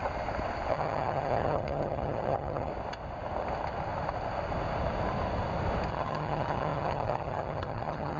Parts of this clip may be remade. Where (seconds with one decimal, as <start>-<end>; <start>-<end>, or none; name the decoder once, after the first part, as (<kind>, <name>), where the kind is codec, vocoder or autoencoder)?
0.7-2.7 (vocoder, HiFi-GAN); 5.9-8.2